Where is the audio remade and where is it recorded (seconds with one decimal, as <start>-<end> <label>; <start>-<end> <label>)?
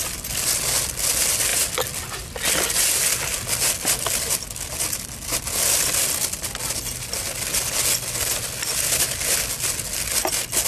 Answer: 0.0-10.7 recorded